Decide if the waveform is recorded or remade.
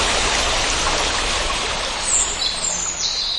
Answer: recorded